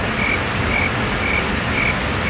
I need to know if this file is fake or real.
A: real